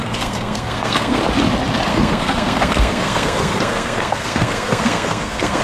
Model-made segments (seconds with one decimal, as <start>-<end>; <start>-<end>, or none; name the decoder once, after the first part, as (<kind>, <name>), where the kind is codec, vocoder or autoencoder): 0.0-1.2 (codec, SNAC); 1.9-5.6